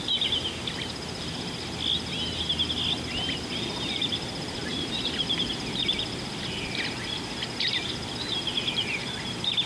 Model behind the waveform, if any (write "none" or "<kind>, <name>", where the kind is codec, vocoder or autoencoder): none